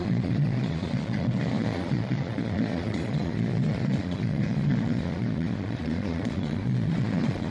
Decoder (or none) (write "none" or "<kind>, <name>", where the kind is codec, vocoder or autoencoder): vocoder, Vocos